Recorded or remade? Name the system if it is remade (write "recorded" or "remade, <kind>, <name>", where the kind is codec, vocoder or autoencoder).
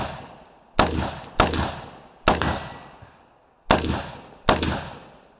recorded